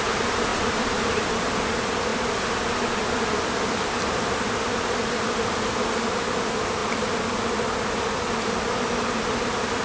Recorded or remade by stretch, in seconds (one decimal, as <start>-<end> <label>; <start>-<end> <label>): 0.0-9.8 recorded